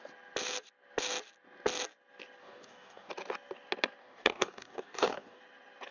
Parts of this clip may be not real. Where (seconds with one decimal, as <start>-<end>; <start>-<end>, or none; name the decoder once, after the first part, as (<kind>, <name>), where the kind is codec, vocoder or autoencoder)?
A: 2.4-3.1 (codec, DAC); 4.0-5.4